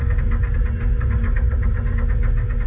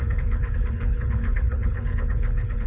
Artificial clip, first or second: second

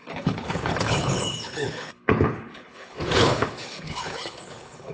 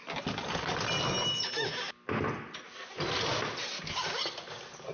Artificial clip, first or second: first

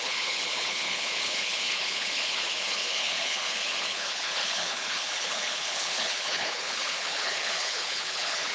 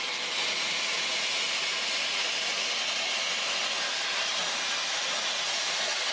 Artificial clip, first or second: first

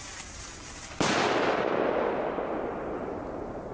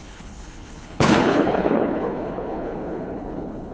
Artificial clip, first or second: second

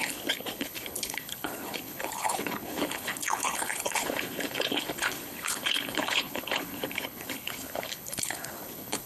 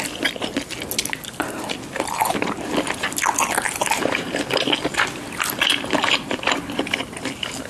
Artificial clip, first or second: first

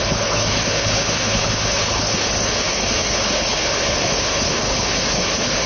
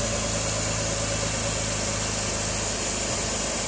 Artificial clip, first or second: first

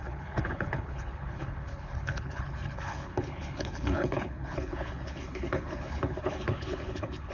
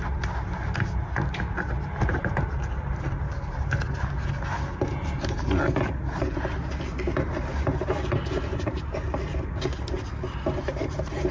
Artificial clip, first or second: first